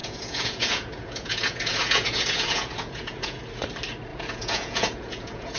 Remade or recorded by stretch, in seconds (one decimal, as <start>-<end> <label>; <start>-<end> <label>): 0.0-3.4 remade; 3.4-4.1 recorded; 4.1-5.6 remade